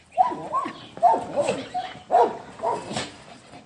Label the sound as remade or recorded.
recorded